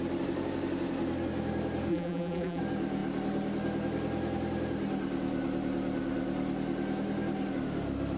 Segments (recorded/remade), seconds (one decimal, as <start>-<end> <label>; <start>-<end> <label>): 0.0-1.9 recorded; 1.9-2.6 remade; 2.6-8.2 recorded